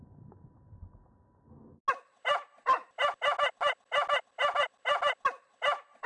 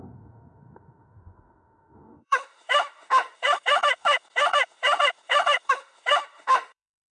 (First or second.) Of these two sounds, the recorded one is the first